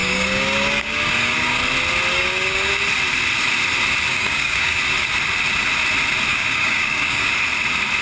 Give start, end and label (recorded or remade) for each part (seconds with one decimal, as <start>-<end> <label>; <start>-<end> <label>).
0.0-1.6 remade; 1.6-2.1 recorded; 2.1-2.7 remade; 2.7-4.1 recorded; 4.1-4.8 remade; 4.8-6.3 recorded; 6.3-7.3 remade; 7.3-8.0 recorded